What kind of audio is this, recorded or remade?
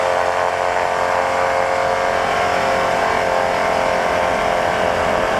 recorded